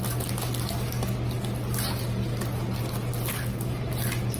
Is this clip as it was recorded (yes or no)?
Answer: yes